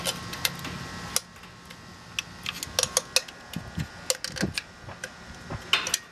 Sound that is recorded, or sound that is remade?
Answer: recorded